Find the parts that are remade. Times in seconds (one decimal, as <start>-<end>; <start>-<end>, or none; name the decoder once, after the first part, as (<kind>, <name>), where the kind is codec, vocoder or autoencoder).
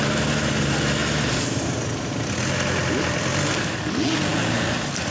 none